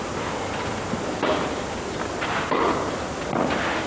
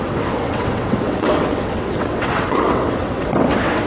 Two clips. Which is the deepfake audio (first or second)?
second